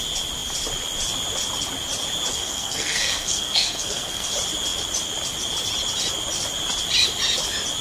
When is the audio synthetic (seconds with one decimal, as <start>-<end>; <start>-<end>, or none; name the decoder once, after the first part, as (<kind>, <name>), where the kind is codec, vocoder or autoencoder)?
2.3-4.3 (codec, SNAC)